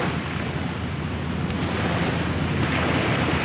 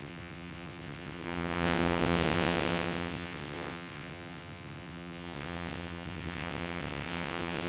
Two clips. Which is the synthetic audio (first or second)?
second